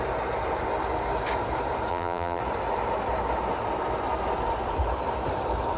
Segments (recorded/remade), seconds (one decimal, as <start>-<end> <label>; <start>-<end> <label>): 0.0-1.9 recorded; 1.9-2.4 remade; 2.4-5.8 recorded

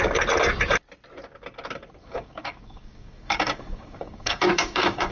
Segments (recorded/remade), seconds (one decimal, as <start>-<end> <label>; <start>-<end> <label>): 0.0-2.0 recorded; 2.0-5.1 remade

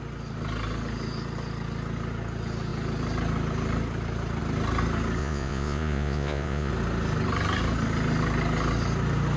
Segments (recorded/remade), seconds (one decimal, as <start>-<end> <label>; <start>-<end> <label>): 0.0-5.2 recorded; 5.2-6.7 remade; 6.7-9.4 recorded

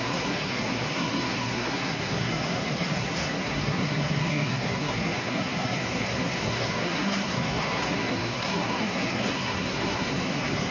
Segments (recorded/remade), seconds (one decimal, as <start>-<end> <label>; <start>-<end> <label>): 0.0-10.7 remade